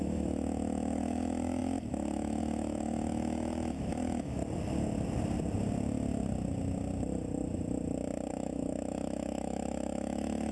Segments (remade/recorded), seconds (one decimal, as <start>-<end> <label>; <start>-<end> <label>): 0.0-4.4 remade; 4.4-8.3 recorded; 8.3-10.5 remade